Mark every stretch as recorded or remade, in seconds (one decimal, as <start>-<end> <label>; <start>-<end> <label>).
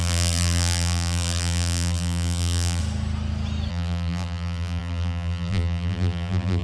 0.0-2.8 remade; 2.8-3.7 recorded; 3.7-6.6 remade